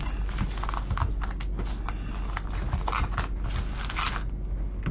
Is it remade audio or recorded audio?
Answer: recorded